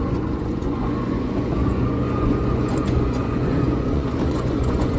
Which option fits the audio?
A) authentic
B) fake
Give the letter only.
B